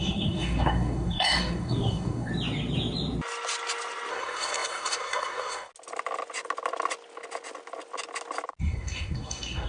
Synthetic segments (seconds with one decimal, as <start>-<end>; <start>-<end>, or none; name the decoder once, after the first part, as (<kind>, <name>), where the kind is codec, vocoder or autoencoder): 0.0-2.3 (codec, SNAC); 4.1-5.7; 8.6-9.7